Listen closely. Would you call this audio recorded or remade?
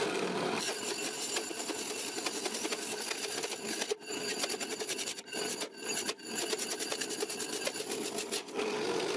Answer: recorded